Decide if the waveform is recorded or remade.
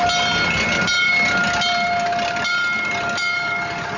recorded